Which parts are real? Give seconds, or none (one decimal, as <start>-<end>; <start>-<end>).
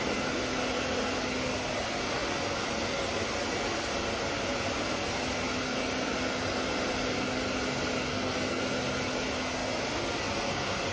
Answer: 0.0-8.1; 8.6-10.9